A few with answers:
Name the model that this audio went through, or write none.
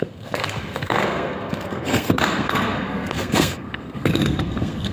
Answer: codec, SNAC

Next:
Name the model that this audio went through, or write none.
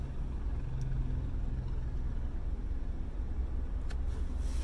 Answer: none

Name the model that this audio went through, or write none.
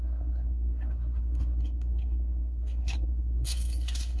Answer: codec, SNAC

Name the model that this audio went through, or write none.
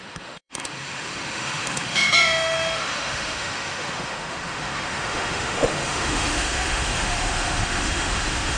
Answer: autoencoder, DAC-VAE